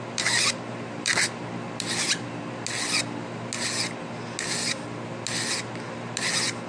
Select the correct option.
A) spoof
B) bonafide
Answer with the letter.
B